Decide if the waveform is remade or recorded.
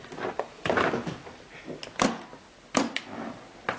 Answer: recorded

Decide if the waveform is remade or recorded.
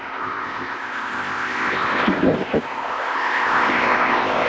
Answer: remade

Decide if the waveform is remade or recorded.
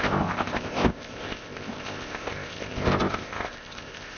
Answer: remade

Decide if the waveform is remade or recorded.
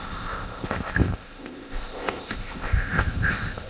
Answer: remade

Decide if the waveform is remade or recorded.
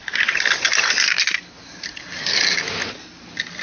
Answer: recorded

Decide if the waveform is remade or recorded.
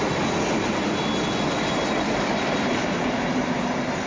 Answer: recorded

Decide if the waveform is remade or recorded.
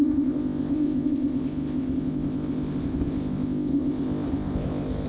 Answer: remade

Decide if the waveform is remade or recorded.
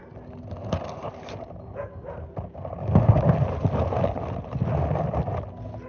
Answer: recorded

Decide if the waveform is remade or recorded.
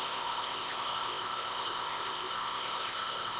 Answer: remade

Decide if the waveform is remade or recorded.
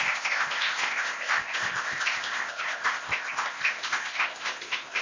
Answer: remade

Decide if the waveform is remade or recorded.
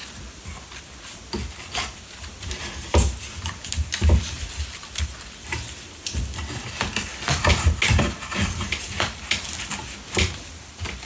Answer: recorded